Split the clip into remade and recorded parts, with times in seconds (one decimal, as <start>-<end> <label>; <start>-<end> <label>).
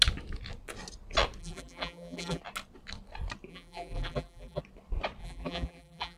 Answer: 0.0-1.4 recorded; 1.4-2.4 remade; 2.4-3.5 recorded; 3.5-4.6 remade; 4.6-5.2 recorded; 5.2-6.2 remade